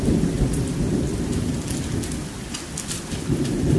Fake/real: fake